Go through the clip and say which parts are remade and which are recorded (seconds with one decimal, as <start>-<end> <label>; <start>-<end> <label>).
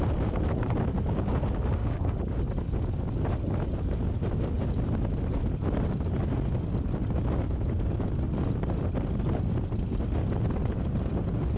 0.0-1.8 recorded; 1.8-2.4 remade; 2.4-11.6 recorded